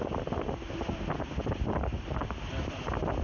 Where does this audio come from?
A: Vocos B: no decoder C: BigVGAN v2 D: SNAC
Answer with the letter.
B